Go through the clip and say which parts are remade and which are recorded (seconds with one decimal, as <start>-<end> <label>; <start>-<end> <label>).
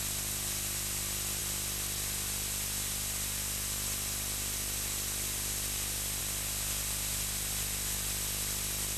0.0-9.0 recorded